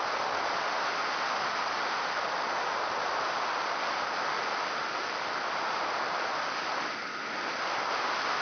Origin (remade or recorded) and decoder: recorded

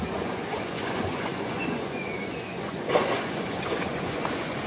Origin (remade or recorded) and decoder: remade, vocoder, Vocos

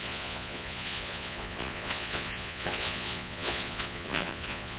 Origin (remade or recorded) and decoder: remade, vocoder, Vocos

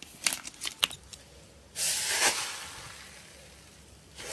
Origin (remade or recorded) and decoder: recorded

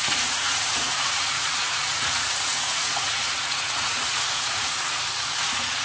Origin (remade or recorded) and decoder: remade, vocoder, Vocos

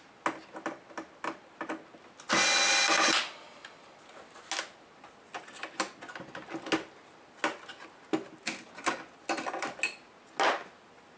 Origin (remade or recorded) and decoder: recorded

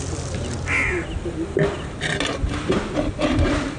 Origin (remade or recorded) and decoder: recorded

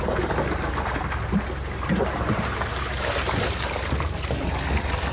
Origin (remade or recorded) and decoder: recorded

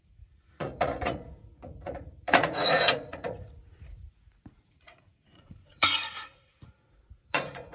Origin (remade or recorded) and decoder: remade, vocoder, Vocos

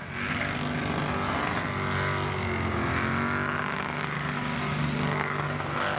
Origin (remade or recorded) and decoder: recorded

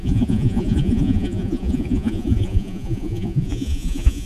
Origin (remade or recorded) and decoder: remade, vocoder, Vocos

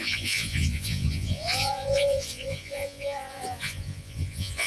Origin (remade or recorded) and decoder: remade, vocoder, Vocos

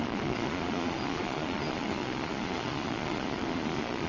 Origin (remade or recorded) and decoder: remade, vocoder, Vocos